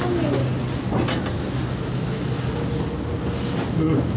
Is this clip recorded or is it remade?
recorded